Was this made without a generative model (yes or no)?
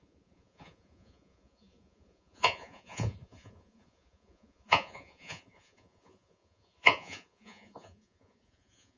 no